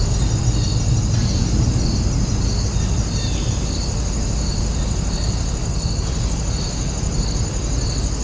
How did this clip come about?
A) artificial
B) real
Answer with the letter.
B